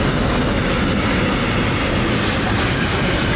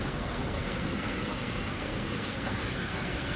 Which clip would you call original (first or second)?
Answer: first